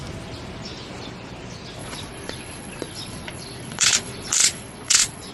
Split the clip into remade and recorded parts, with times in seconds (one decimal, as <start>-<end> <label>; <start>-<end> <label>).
0.0-1.8 recorded; 1.8-5.3 remade